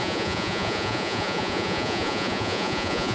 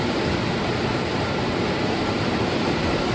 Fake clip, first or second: first